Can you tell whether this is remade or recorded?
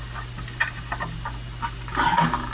recorded